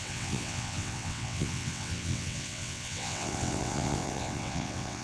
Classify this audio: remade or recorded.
remade